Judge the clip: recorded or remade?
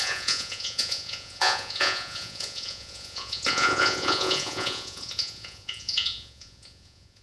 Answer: remade